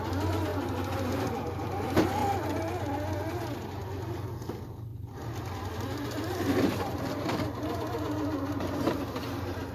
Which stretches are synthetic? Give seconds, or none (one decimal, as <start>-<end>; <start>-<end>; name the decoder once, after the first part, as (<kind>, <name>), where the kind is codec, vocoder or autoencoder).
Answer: 4.9-7.5 (vocoder, BigVGAN v2)